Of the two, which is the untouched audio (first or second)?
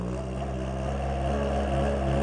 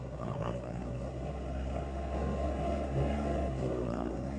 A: first